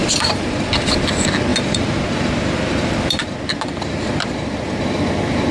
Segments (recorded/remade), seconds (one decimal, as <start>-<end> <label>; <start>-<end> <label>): 0.0-0.7 remade; 0.7-1.5 recorded; 1.5-4.8 remade; 4.8-5.5 recorded